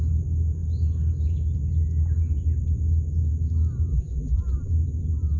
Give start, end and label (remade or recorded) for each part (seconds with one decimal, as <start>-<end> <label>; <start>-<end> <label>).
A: 0.0-3.9 recorded; 3.9-4.7 remade; 4.7-5.4 recorded